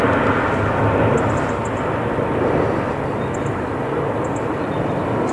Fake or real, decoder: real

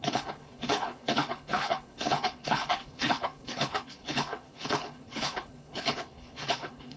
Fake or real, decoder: fake, codec, HILCodec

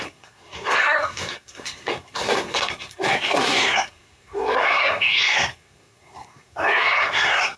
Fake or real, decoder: fake, codec, SNAC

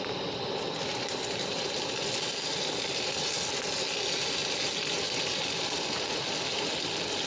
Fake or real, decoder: real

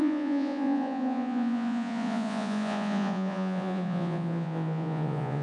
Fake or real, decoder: fake, vocoder, Vocos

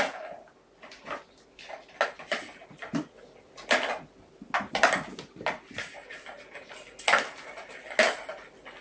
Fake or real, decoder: real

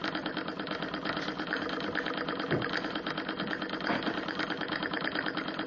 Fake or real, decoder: real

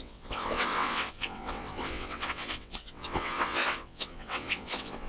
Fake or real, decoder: fake, vocoder, WaveNeXt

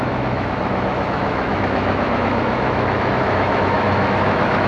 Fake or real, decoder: fake, autoencoder, DAC-VAE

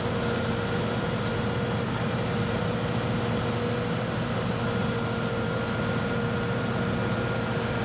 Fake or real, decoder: real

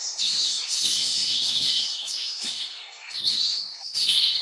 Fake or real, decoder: fake, codec, SNAC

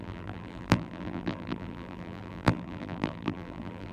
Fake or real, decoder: fake, vocoder, BigVGAN v2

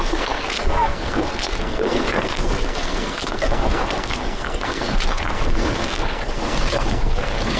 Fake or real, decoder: fake, codec, SNAC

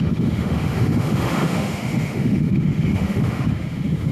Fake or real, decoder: fake, autoencoder, DAC-VAE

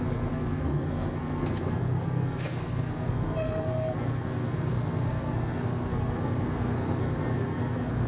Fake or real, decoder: fake, codec, SNAC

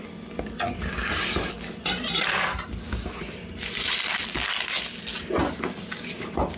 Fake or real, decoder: real